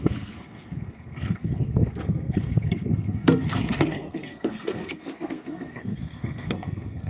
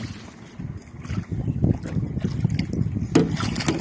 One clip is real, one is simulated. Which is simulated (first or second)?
first